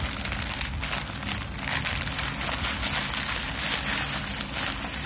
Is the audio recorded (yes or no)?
yes